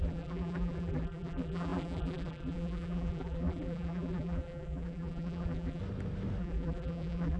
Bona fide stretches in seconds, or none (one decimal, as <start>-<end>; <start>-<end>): 5.8-6.4